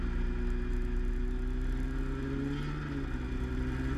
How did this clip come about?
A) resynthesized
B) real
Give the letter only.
B